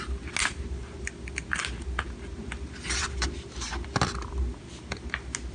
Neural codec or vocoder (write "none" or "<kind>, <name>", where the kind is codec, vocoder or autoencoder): none